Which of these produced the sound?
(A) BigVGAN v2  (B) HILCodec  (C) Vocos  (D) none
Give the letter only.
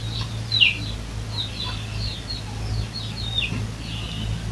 D